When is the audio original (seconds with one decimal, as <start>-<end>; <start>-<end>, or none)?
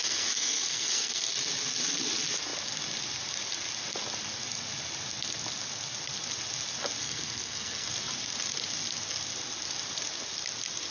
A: 1.3-7.0; 7.9-10.9